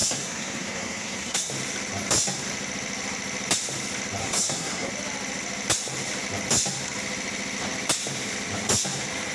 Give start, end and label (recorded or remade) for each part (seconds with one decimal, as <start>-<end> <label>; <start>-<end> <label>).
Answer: 0.0-1.5 remade; 1.5-4.2 recorded; 4.2-4.9 remade; 4.9-9.3 recorded